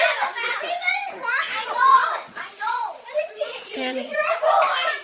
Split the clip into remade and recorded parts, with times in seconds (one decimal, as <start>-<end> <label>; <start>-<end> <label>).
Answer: 0.0-1.6 recorded; 1.6-4.6 remade; 4.6-5.0 recorded